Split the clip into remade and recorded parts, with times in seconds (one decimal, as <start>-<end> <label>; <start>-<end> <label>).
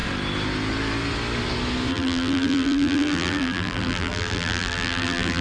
0.0-1.9 recorded; 1.9-5.4 remade